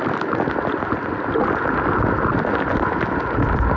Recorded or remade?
recorded